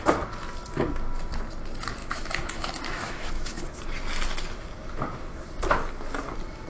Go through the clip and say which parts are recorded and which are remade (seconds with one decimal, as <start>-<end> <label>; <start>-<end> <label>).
0.0-2.0 recorded; 2.0-3.6 remade; 3.6-6.7 recorded